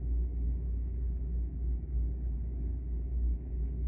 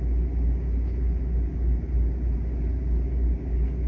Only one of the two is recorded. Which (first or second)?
second